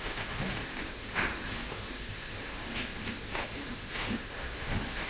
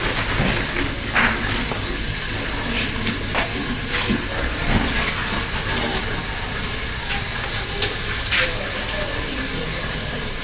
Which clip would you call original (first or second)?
second